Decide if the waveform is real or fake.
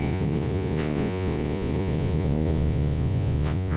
fake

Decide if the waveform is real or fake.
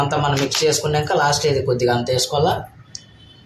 real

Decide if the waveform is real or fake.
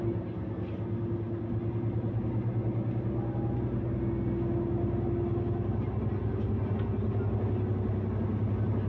real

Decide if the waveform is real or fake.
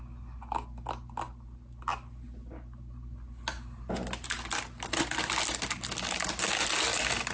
real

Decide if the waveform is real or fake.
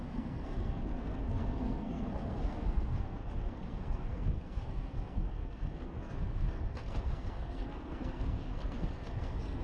fake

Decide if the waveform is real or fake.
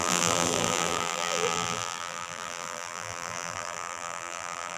fake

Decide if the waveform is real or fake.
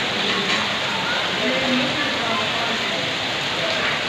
real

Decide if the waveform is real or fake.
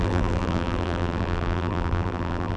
fake